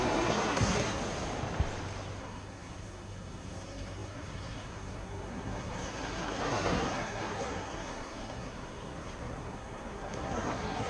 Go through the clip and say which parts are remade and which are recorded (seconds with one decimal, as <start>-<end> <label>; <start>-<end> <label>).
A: 0.0-1.0 remade; 1.0-2.2 recorded; 2.2-10.9 remade